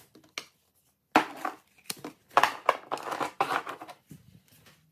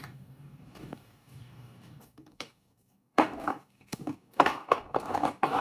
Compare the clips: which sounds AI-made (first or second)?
second